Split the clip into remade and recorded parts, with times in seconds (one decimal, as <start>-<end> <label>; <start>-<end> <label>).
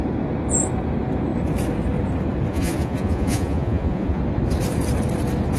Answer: 0.0-2.5 recorded; 2.5-4.2 remade; 4.2-5.6 recorded